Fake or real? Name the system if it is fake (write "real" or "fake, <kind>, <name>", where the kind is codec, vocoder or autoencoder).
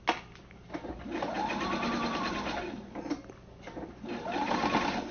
real